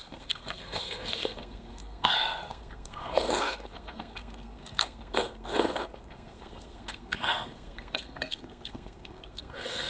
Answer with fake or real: fake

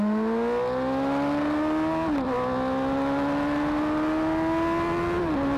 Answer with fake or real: real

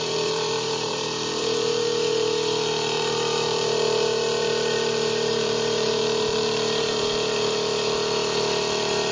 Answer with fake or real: fake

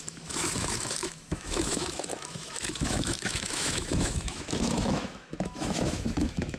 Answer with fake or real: fake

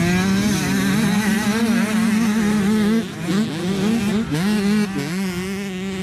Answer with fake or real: real